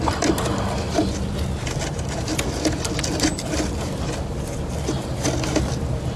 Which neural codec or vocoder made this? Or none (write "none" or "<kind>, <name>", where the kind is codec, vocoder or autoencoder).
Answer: none